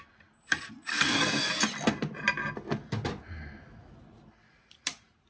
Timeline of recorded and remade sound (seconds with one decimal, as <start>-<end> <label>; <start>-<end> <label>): 0.0-0.9 recorded; 0.9-1.5 remade; 1.5-5.3 recorded